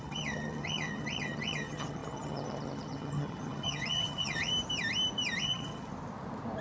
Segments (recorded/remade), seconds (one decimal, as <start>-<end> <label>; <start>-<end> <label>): 0.0-4.5 remade; 4.5-5.4 recorded; 5.4-5.9 remade; 5.9-6.6 recorded